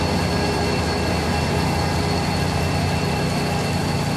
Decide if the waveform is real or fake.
real